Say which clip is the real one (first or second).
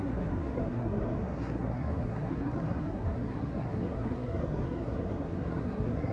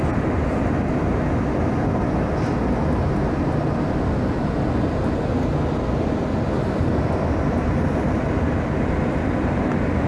second